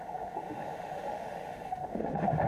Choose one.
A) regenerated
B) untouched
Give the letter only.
A